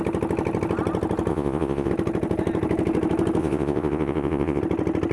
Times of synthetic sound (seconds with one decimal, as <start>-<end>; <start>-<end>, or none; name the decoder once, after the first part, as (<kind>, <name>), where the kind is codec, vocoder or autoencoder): 1.3-1.9 (vocoder, Vocos); 3.4-4.6